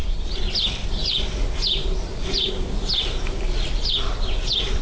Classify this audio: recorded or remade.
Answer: recorded